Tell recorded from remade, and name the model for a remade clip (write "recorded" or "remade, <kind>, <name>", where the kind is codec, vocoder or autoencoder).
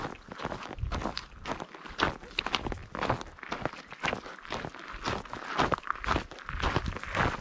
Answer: recorded